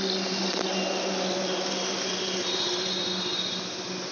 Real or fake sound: real